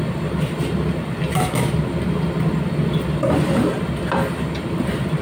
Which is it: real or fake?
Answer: real